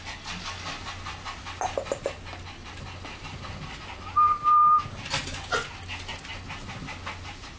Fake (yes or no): no